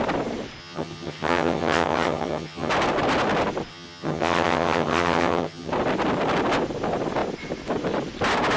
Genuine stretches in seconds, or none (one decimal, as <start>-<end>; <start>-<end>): 0.0-0.6; 2.7-3.7; 5.7-8.6